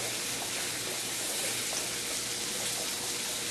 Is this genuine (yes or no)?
yes